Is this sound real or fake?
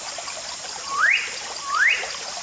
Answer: real